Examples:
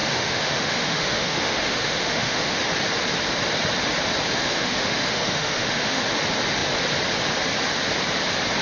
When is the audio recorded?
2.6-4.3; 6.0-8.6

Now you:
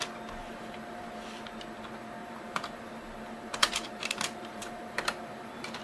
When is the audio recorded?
0.0-0.4; 1.1-2.2

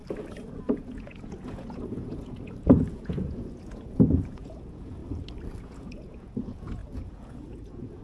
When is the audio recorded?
0.0-0.6; 5.0-5.6